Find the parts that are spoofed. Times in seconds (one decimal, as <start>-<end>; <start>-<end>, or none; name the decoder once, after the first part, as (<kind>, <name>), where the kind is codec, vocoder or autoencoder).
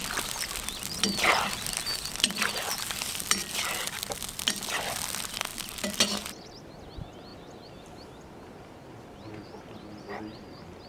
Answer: 7.3-10.2 (vocoder, BigVGAN v2)